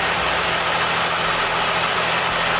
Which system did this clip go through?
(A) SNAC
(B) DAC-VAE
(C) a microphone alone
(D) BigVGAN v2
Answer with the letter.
C